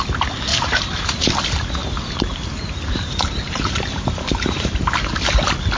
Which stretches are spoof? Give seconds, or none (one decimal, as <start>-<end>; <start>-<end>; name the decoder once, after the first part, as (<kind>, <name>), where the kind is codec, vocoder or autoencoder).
0.5-1.3 (vocoder, BigVGAN v2); 1.8-4.7